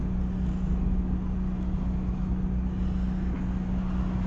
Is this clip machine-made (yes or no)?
no